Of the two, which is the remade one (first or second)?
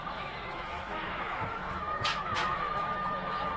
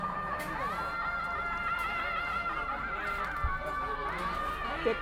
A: first